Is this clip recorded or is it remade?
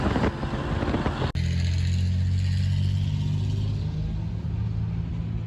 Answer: recorded